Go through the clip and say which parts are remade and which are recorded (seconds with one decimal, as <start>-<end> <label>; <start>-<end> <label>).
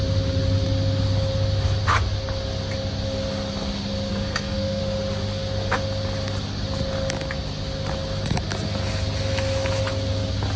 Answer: 0.0-4.1 recorded; 4.1-4.8 remade; 4.8-10.6 recorded